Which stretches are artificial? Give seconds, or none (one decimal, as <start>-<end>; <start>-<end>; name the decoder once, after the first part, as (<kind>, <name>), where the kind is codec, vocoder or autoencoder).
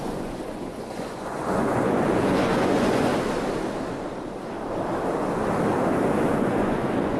0.0-3.1 (vocoder, Vocos); 6.3-7.2